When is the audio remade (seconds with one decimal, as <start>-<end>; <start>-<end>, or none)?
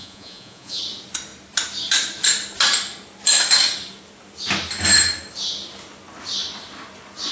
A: 0.0-0.8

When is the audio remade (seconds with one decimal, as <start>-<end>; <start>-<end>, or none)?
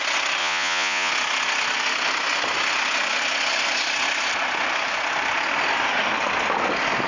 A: 0.4-1.1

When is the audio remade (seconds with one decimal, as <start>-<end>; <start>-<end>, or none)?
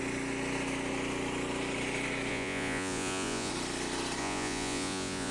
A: 2.3-3.5; 4.2-5.3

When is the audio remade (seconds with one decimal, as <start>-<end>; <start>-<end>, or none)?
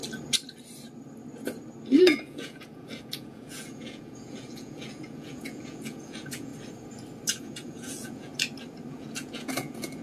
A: 2.0-6.5; 7.4-8.3; 8.9-10.0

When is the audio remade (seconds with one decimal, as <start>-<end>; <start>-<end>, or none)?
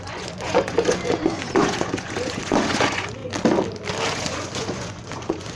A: 0.0-3.2; 4.1-5.5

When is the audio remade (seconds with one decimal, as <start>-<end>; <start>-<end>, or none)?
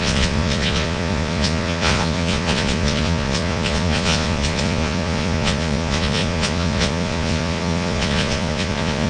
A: 0.0-9.1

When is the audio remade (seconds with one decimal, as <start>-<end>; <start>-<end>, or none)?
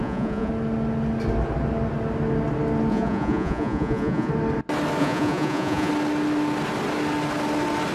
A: 0.0-0.5; 2.9-4.3; 5.0-5.9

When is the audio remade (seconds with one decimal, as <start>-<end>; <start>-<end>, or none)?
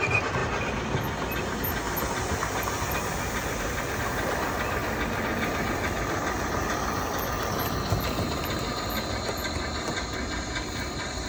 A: none